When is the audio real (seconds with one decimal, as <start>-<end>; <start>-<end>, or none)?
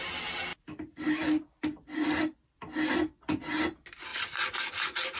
0.0-5.2